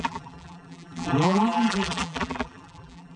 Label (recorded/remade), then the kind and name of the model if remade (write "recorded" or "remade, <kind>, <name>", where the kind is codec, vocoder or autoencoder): remade, vocoder, BigVGAN v2